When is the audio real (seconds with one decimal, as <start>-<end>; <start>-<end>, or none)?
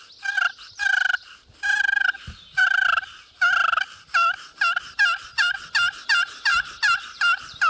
0.0-7.7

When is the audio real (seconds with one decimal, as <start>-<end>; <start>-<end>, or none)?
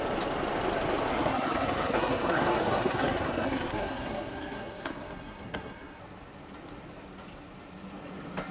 0.0-1.1; 6.0-8.5